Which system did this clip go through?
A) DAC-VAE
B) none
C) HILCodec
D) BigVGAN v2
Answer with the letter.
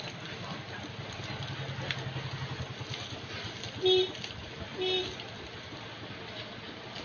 B